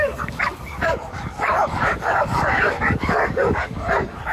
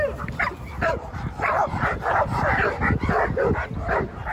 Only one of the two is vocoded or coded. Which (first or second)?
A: first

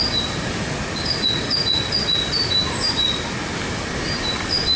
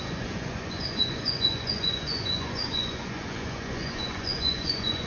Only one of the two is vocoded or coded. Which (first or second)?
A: second